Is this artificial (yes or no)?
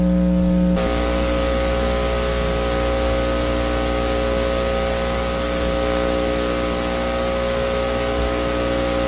no